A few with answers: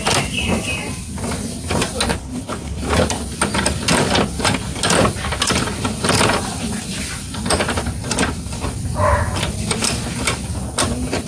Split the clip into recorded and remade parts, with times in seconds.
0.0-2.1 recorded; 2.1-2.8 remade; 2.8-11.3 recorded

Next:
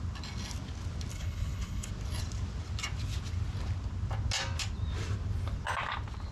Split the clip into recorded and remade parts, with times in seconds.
0.0-1.1 recorded; 1.1-1.9 remade; 1.9-6.3 recorded

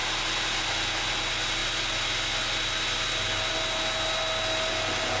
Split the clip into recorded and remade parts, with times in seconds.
0.0-5.2 recorded